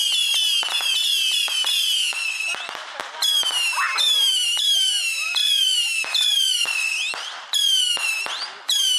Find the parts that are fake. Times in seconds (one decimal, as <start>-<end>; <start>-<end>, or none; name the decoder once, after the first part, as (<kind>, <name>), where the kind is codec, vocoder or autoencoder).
0.0-3.0 (vocoder, BigVGAN v2); 5.4-8.1